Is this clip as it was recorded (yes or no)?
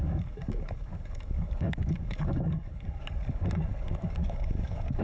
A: no